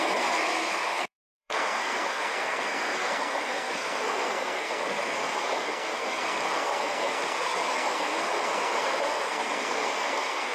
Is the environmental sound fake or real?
fake